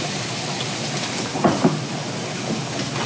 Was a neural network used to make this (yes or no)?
no